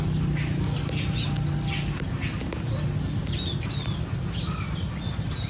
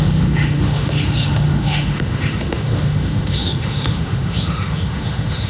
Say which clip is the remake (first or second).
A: second